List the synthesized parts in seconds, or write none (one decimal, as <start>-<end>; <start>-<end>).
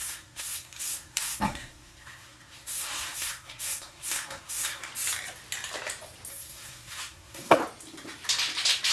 0.0-4.9; 6.3-7.6